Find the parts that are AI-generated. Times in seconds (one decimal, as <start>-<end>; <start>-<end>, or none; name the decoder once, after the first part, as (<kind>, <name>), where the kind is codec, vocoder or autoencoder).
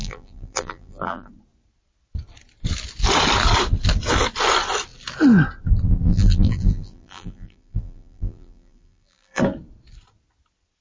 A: 0.0-1.3 (vocoder, BigVGAN v2); 6.1-9.4